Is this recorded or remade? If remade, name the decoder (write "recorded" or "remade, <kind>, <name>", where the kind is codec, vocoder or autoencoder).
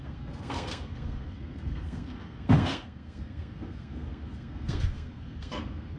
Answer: remade, codec, SNAC